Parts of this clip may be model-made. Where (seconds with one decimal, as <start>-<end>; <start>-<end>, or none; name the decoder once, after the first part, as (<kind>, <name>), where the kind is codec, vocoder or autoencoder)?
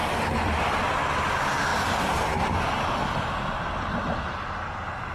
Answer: none